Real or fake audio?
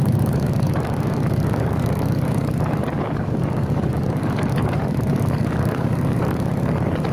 fake